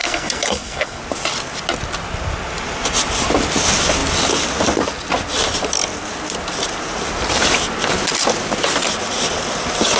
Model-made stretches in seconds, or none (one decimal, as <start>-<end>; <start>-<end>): 0.0-1.0